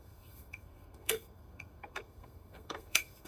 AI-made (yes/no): yes